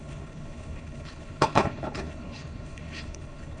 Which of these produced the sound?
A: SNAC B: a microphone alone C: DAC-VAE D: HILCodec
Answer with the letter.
D